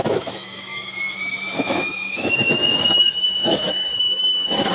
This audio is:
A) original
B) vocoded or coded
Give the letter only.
B